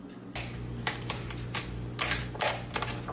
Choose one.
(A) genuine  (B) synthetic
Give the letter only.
A